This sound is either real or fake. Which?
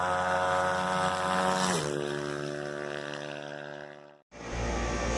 real